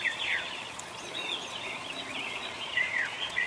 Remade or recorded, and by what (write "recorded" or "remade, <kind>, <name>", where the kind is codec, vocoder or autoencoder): remade, vocoder, Vocos